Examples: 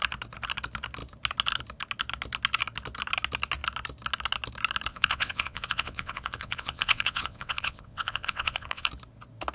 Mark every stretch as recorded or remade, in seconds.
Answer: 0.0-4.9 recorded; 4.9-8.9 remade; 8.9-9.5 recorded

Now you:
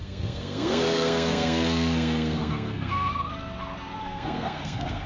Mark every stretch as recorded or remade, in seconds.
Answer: 0.0-3.1 remade; 3.1-4.0 recorded; 4.0-5.1 remade

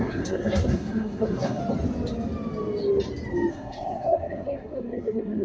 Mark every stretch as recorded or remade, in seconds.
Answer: 0.0-1.6 remade; 1.6-3.5 recorded; 3.5-5.4 remade

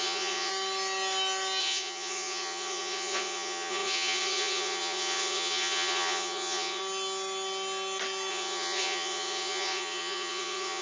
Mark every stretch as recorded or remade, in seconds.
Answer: 0.0-0.5 remade; 0.5-1.6 recorded; 1.6-6.8 remade; 6.8-8.3 recorded; 8.3-10.8 remade

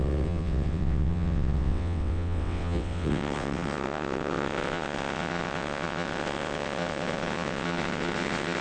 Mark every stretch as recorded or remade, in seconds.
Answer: 0.0-8.6 remade